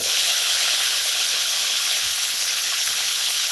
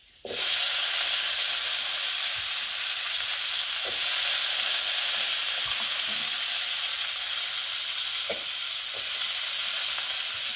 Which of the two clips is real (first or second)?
second